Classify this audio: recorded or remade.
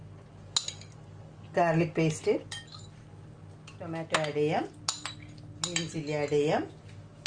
recorded